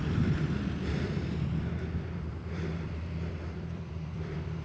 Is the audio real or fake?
fake